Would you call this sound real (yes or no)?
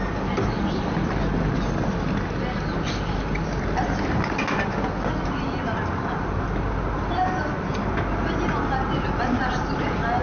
yes